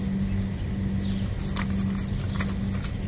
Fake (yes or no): no